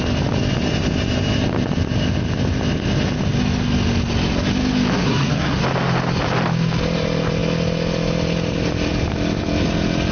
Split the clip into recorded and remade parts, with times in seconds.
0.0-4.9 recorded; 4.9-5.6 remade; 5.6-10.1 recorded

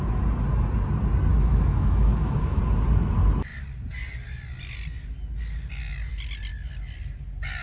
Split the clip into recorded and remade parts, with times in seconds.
0.0-1.3 recorded; 1.3-2.6 remade; 2.6-7.6 recorded

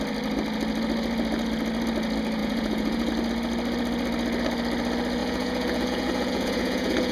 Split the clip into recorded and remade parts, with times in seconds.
0.0-2.4 recorded; 2.4-3.1 remade; 3.1-5.2 recorded; 5.2-7.1 remade

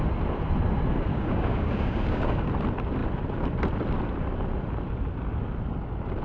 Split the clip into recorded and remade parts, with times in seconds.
0.0-1.1 recorded; 1.1-2.4 remade; 2.4-6.2 recorded

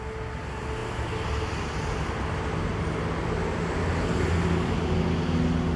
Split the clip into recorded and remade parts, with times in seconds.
0.0-5.8 recorded

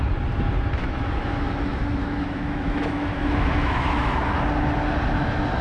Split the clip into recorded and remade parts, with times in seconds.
0.0-0.8 recorded; 0.8-4.2 remade; 4.2-5.6 recorded

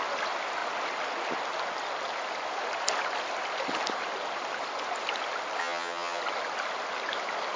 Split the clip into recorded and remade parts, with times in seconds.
0.0-5.6 recorded; 5.6-6.2 remade; 6.2-7.6 recorded

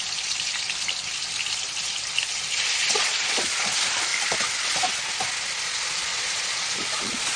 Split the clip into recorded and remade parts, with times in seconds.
0.0-3.1 recorded; 3.1-3.6 remade; 3.6-6.1 recorded; 6.1-7.4 remade